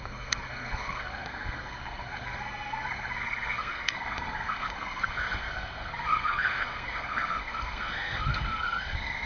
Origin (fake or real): fake